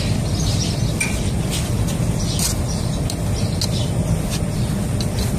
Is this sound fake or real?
real